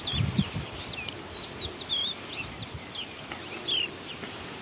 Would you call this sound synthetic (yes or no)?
no